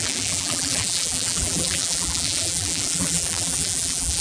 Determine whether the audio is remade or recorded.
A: remade